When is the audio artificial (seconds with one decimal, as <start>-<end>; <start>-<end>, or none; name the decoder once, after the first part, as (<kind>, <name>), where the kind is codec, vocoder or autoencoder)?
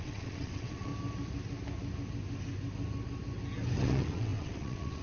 0.0-0.9 (vocoder, WaveNeXt); 3.8-5.0